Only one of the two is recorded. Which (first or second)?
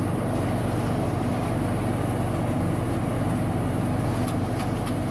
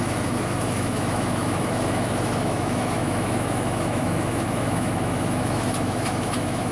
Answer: first